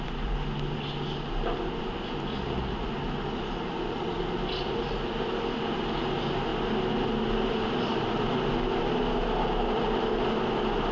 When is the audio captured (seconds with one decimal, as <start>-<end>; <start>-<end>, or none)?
0.0-2.3; 2.9-10.9